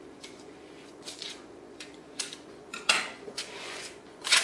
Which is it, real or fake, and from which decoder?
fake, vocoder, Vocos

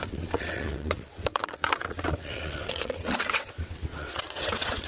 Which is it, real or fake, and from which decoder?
fake, vocoder, WaveNeXt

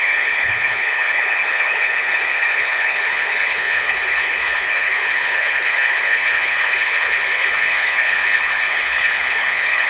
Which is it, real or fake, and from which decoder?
fake, codec, HILCodec